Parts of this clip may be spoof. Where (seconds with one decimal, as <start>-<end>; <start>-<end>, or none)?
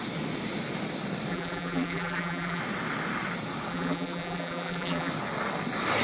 1.3-2.6; 3.7-5.1